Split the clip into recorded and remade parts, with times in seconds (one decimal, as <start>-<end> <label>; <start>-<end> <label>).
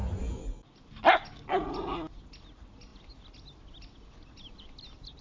0.0-5.2 recorded